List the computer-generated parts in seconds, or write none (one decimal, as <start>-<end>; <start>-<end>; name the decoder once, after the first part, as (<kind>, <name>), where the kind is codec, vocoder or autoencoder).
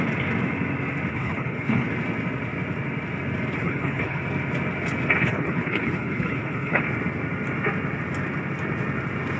1.1-1.9 (codec, HILCodec); 3.6-4.2; 5.2-6.8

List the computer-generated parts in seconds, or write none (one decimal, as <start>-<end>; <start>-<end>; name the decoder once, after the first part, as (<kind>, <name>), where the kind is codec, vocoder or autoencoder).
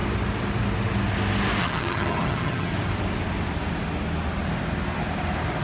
1.6-2.7 (vocoder, HiFi-GAN)